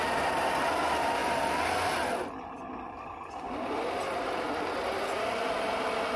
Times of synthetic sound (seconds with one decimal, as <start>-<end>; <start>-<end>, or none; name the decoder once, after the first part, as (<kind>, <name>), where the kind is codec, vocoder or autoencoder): none